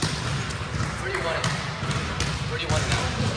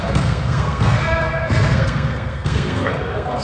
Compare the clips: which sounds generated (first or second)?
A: second